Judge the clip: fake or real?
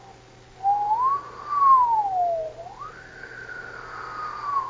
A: real